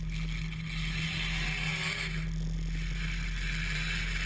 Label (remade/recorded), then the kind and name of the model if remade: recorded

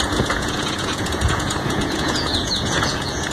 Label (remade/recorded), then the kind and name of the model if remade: remade, vocoder, Vocos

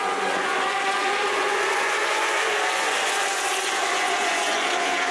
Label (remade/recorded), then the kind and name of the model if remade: remade, vocoder, Vocos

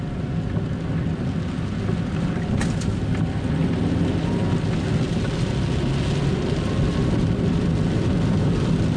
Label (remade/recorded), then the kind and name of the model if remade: recorded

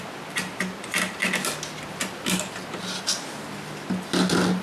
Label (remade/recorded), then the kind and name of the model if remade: recorded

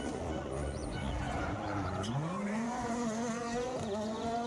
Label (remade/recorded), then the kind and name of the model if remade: remade, vocoder, Vocos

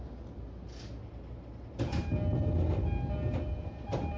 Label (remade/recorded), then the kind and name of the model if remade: recorded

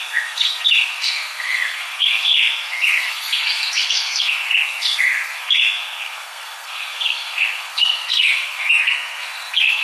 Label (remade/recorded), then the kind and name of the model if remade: remade, codec, SNAC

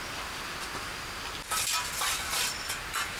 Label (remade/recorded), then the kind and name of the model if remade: recorded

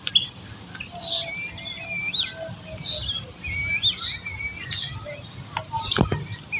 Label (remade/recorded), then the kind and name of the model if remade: recorded